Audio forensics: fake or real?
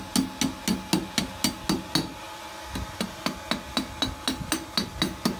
real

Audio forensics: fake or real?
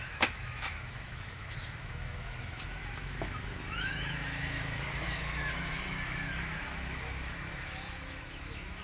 fake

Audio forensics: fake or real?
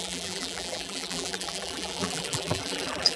fake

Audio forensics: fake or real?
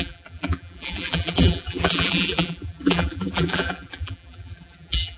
fake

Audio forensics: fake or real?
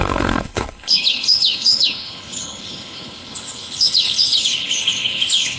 fake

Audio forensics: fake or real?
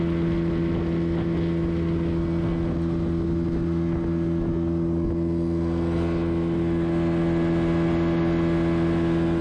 real